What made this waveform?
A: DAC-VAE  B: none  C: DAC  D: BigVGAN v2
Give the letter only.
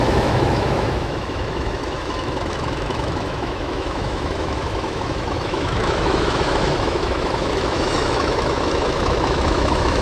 A